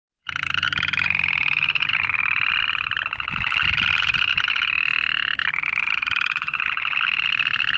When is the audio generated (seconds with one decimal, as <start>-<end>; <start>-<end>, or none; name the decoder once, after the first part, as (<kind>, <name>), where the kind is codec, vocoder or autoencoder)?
1.4-2.2 (vocoder, BigVGAN v2)